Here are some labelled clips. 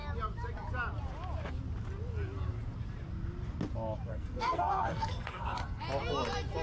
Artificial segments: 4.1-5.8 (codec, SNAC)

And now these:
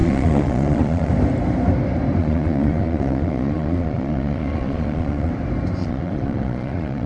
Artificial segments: 0.0-1.1 (vocoder, Vocos); 2.2-5.3; 5.8-7.1

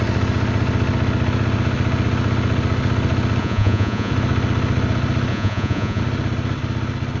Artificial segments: 3.4-4.1 (vocoder, Vocos); 5.3-6.0